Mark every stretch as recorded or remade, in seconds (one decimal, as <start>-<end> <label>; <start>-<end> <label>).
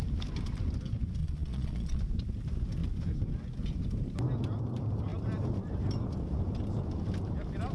0.0-1.2 recorded; 1.2-2.0 remade; 2.0-7.7 recorded